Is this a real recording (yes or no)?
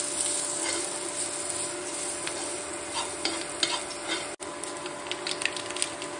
yes